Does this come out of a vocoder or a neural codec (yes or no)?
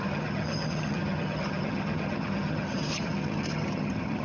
yes